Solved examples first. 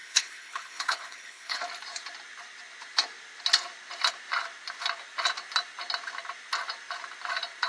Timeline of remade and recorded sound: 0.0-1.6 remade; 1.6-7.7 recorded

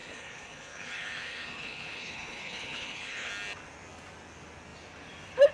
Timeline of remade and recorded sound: 0.0-3.3 remade; 3.3-5.5 recorded

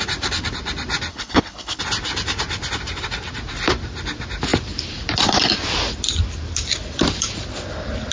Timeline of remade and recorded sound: 0.0-1.1 recorded; 1.1-1.8 remade; 1.8-8.1 recorded

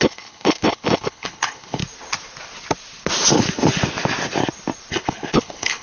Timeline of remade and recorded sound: 0.0-1.8 remade; 1.8-4.9 recorded; 4.9-5.8 remade

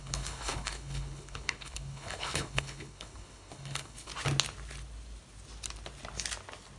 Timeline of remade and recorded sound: 0.0-4.1 remade; 4.1-6.8 recorded